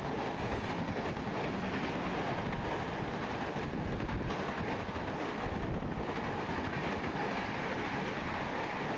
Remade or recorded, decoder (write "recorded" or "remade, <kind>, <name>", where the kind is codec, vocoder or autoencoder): recorded